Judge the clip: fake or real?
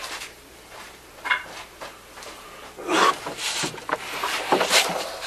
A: fake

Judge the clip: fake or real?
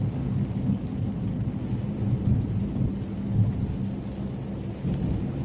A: real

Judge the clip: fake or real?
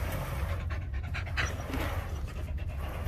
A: real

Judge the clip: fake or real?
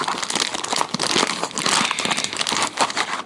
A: real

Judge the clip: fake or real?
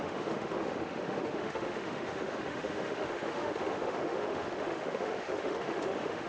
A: fake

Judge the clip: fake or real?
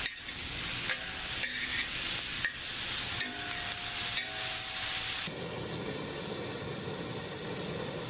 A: real